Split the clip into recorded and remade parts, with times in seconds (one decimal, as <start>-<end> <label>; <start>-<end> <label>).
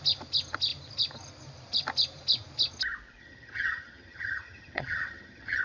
0.0-3.2 recorded; 3.2-5.6 remade